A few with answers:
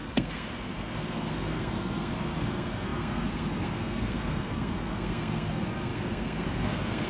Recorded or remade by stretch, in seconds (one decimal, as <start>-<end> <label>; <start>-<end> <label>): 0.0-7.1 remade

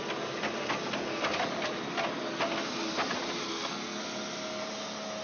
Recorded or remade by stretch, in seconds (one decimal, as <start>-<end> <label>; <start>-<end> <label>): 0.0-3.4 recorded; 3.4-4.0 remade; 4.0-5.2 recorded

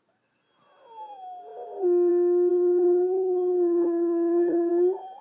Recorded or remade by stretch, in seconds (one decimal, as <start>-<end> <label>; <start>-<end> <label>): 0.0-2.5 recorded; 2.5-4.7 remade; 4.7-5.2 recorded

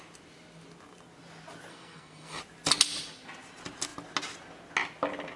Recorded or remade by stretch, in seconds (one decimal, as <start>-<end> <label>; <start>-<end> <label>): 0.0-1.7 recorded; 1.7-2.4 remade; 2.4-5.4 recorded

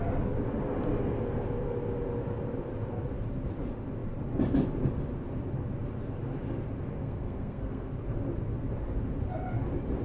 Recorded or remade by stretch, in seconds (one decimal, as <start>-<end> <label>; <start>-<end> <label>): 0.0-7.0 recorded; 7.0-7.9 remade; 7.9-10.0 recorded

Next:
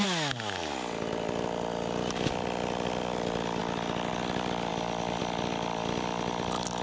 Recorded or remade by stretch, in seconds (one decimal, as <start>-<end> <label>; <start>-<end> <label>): 0.0-6.8 recorded

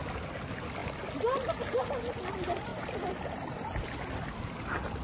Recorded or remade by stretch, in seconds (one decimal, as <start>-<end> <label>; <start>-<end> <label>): 0.0-5.0 recorded